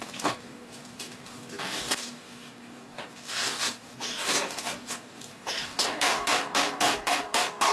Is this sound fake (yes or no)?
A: yes